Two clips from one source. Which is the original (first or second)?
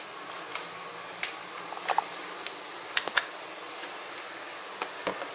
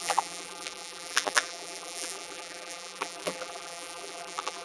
first